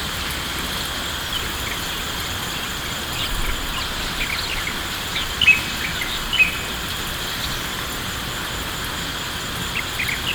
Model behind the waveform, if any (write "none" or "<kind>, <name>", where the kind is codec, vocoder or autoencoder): none